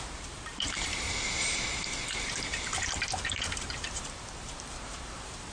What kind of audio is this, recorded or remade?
remade